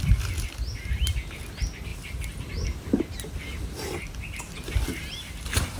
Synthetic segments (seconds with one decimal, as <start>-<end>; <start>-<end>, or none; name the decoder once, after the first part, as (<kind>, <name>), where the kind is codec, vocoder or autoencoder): none